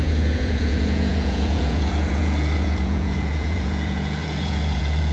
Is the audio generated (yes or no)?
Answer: yes